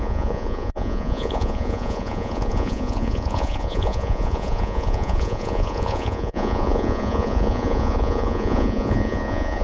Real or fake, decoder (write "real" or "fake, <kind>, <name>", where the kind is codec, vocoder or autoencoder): fake, vocoder, Vocos